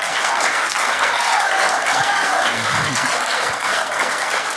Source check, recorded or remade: remade